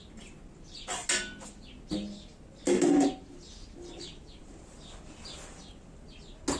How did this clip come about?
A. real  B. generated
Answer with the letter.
A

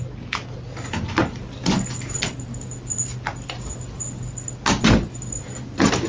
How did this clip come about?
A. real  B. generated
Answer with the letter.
A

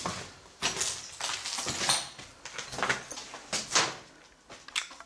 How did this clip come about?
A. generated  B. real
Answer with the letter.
B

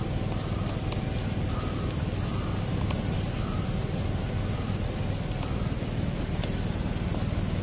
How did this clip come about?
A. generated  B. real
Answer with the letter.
B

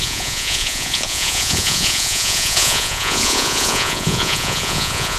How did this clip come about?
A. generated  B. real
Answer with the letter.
A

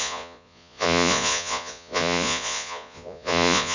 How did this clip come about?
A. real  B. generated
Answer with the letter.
B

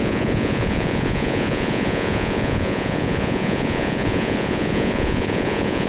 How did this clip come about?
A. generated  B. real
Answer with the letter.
A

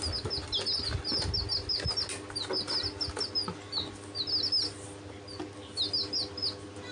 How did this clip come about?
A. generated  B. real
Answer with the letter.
B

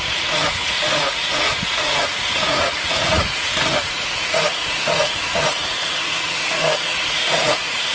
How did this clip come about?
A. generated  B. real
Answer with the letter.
A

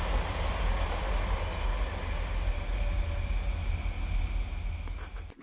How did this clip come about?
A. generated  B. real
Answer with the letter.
B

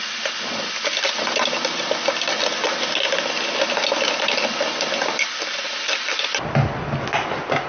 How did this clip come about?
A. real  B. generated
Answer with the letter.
A